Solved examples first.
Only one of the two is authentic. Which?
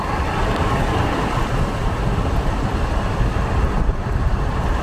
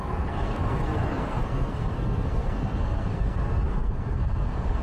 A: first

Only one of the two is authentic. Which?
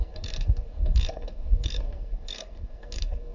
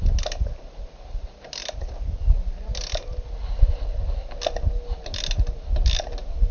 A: second